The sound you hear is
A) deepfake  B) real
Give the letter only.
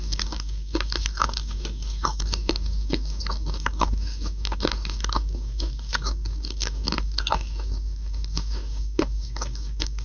A